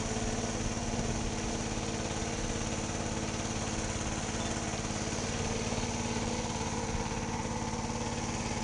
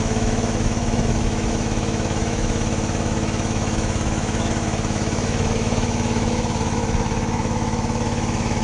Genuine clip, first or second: first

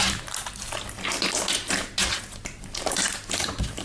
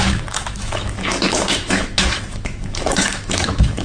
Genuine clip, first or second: first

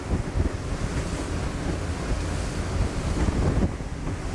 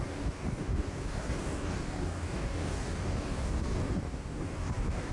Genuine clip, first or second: first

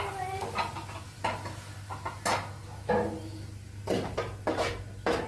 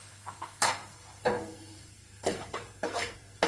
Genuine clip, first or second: first